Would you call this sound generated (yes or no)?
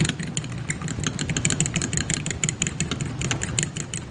no